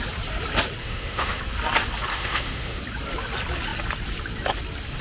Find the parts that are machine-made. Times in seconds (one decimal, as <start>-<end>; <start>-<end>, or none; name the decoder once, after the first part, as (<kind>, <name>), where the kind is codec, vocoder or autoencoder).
0.8-1.4 (autoencoder, DAC-VAE); 2.1-2.8